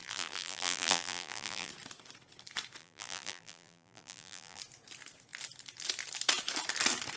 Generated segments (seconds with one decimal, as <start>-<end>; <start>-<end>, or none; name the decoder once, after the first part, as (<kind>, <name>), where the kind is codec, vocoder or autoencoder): 0.0-1.7 (vocoder, BigVGAN v2); 2.8-4.6